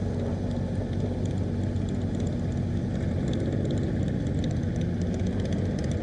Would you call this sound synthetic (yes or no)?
no